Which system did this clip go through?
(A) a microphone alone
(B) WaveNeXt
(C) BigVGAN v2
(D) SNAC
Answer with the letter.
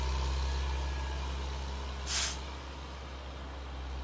A